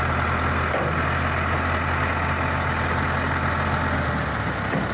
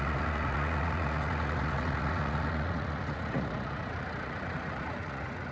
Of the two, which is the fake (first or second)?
second